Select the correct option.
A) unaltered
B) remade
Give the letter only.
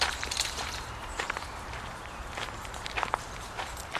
B